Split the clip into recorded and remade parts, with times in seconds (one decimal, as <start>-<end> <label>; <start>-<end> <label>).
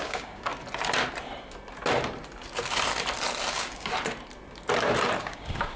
0.0-0.5 remade; 0.5-3.5 recorded; 3.5-3.9 remade; 3.9-5.2 recorded; 5.2-5.8 remade